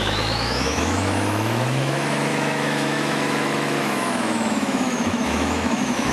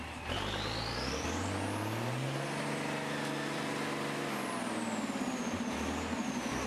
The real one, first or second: second